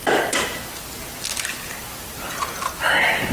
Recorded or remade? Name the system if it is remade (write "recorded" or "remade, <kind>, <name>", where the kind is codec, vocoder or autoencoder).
recorded